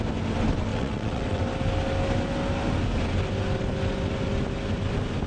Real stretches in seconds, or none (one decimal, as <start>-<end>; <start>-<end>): 0.0-0.7; 1.4-5.3